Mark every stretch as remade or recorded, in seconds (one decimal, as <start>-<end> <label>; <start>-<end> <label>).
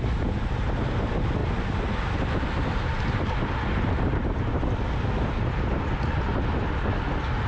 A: 0.0-1.4 recorded; 1.4-4.6 remade; 4.6-7.5 recorded